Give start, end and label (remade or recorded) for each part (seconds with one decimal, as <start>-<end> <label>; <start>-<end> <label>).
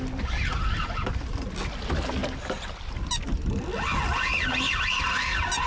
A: 0.0-5.7 recorded